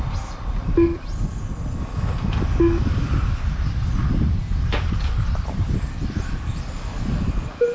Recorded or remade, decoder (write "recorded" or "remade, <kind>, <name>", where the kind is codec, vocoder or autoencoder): recorded